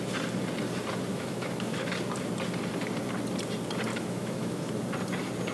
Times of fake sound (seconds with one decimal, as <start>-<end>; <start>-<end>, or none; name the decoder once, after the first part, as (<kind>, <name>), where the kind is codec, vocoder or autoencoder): 1.1-1.9 (autoencoder, DAC-VAE); 3.9-4.7